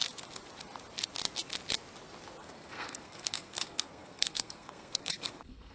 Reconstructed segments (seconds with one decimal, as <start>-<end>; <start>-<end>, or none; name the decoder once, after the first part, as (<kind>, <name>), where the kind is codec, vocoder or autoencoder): 2.4-5.7 (codec, SNAC)